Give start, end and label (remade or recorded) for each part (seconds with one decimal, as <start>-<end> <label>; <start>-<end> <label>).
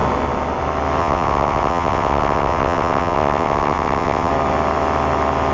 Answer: 0.0-1.0 recorded; 1.0-4.3 remade; 4.3-5.5 recorded